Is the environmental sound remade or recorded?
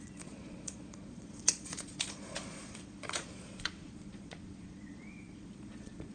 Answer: remade